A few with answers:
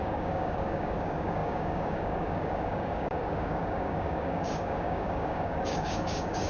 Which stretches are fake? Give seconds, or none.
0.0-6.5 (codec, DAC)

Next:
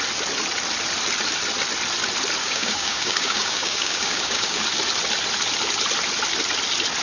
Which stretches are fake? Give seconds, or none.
2.4-4.6 (codec, DAC)